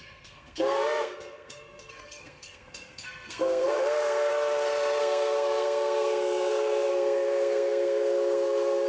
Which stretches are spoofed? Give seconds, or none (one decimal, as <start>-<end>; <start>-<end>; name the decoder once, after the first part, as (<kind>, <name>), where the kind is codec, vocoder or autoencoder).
0.0-4.3 (codec, SNAC); 5.0-8.9